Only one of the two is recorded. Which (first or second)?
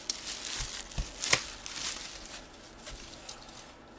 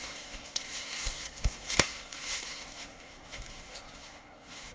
first